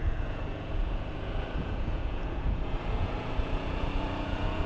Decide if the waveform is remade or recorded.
remade